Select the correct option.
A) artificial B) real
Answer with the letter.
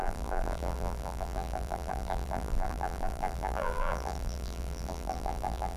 A